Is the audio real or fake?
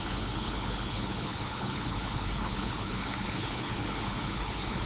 fake